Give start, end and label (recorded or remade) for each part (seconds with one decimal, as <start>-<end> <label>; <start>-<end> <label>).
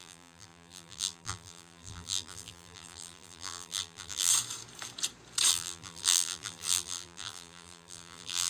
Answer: 0.0-4.3 remade; 4.3-5.5 recorded; 5.5-8.5 remade